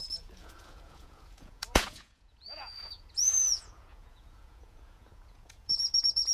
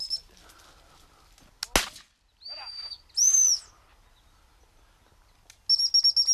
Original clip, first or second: second